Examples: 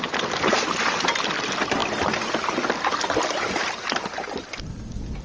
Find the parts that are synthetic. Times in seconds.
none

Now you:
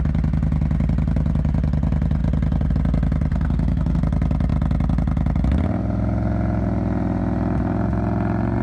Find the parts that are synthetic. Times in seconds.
3.3-4.0 (codec, SNAC)

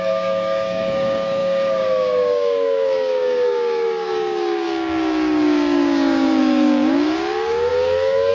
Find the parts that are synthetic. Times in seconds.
0.0-8.3 (codec, DAC)

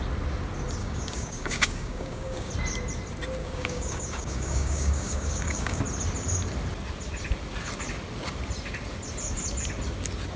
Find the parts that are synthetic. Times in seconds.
0.8-2.5 (codec, DAC); 3.4-5.8